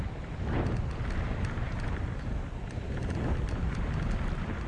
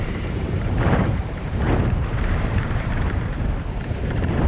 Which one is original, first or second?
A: first